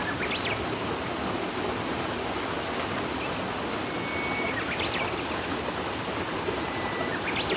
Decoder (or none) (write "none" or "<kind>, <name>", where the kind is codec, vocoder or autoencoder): none